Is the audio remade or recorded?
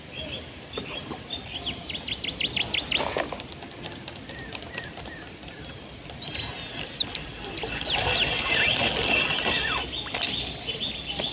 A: recorded